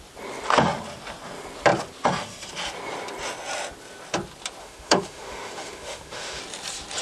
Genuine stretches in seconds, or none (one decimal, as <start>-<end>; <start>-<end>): 0.0-4.6; 6.4-7.0